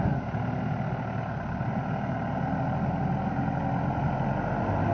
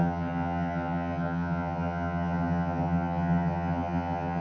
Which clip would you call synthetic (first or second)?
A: second